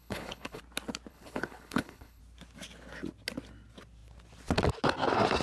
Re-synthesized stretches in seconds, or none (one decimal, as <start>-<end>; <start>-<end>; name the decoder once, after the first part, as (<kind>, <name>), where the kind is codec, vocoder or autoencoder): 0.0-0.6 (codec, HILCodec); 1.1-2.2